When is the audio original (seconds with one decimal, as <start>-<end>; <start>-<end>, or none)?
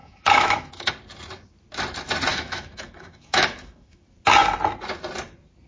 0.9-2.3; 4.0-5.7